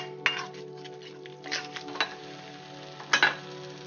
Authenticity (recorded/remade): recorded